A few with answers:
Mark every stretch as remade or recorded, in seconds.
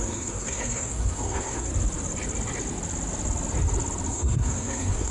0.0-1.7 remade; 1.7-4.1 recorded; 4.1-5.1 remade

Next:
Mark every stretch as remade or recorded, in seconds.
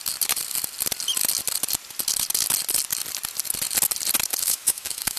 0.0-4.3 recorded; 4.3-5.2 remade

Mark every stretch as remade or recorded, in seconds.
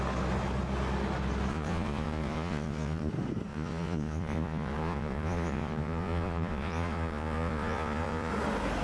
0.0-1.5 recorded; 1.5-3.1 remade; 3.1-3.5 recorded; 3.5-8.3 remade; 8.3-8.8 recorded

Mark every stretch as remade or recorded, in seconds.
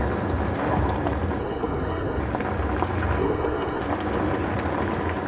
0.0-1.4 recorded; 1.4-2.2 remade; 2.2-3.2 recorded; 3.2-3.8 remade; 3.8-5.3 recorded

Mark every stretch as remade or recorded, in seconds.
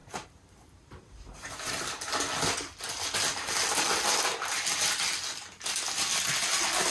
0.0-1.7 remade; 1.7-6.9 recorded